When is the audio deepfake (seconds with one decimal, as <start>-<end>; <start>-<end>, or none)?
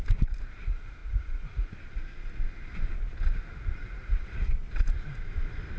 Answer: 1.0-1.7; 3.8-4.5